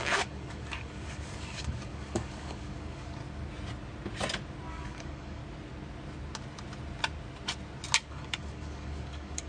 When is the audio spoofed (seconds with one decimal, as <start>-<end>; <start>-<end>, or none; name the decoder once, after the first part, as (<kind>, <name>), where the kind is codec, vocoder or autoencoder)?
0.0-3.2 (codec, DAC); 4.7-5.4; 8.1-9.5